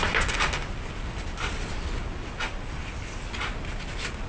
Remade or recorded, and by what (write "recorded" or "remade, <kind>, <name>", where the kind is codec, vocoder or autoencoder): recorded